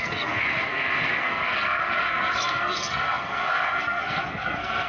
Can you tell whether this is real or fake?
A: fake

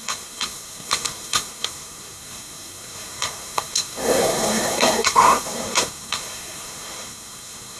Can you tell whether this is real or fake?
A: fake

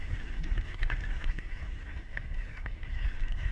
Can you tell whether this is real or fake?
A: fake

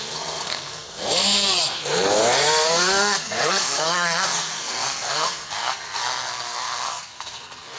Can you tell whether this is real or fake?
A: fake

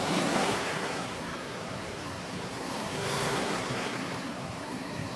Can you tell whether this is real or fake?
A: fake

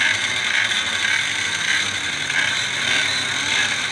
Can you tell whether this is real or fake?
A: real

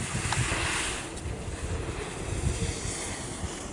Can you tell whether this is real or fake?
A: real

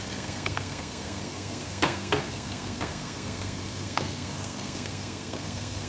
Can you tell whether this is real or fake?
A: fake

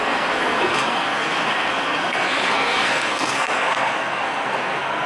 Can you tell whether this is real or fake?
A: fake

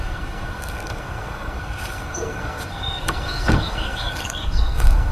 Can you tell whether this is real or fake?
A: fake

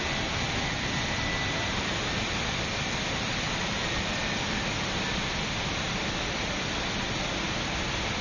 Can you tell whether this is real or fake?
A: real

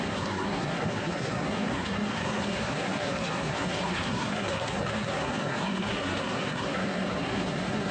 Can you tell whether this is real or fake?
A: fake